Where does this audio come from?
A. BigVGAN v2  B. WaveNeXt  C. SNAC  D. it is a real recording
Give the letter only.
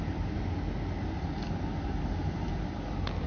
D